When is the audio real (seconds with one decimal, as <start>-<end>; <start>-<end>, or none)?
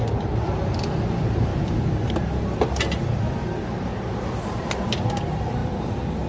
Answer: 0.0-6.3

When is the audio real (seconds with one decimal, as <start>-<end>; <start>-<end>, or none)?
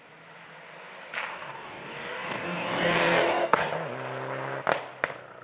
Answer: 0.0-1.3; 3.7-5.4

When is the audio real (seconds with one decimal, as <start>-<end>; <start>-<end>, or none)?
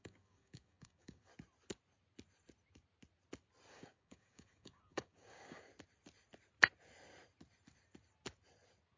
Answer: 1.3-3.7; 5.7-9.0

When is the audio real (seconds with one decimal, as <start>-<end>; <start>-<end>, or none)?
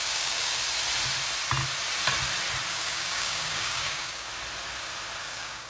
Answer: 0.6-2.7; 4.3-5.2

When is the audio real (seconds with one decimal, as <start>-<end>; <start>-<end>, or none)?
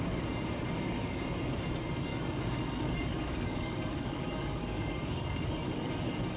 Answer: 0.0-0.7; 1.2-2.1; 5.9-6.4